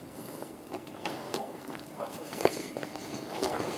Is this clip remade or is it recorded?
remade